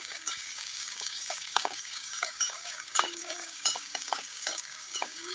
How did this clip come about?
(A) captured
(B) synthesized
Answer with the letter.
B